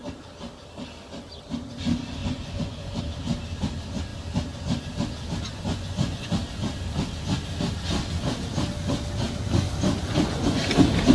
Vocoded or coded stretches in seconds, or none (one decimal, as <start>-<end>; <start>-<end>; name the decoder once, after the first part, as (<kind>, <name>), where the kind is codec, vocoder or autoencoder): 2.2-3.0 (vocoder, Vocos); 5.5-6.3; 10.1-10.6

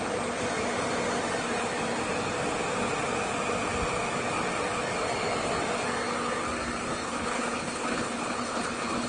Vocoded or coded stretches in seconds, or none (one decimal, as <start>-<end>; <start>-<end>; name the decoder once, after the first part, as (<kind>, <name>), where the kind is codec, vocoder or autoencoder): 7.0-9.1 (codec, HILCodec)

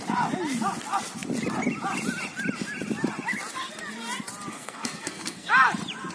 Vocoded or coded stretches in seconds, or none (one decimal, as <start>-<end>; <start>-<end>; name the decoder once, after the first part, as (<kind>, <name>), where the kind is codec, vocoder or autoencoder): 4.5-5.5 (codec, SNAC)

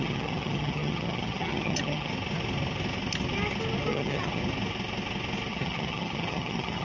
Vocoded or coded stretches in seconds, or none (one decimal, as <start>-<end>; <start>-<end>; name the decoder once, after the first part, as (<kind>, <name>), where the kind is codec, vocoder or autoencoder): 0.0-2.1 (vocoder, HiFi-GAN); 3.9-4.4; 5.5-6.8

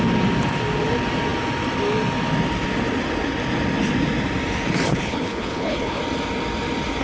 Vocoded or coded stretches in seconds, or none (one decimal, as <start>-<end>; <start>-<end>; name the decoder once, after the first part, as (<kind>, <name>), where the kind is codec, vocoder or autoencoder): 4.9-6.0 (codec, HILCodec)

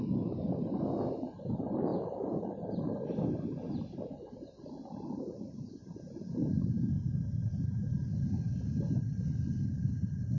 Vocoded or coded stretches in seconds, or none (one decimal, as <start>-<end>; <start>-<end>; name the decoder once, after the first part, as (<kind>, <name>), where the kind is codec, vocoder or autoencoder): none